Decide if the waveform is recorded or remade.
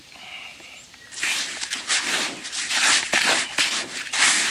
remade